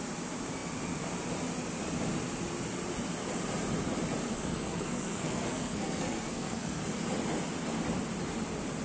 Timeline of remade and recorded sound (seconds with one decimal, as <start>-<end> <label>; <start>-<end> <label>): 0.0-4.3 recorded; 4.3-6.8 remade; 6.8-8.8 recorded